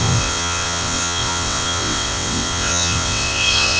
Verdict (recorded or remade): remade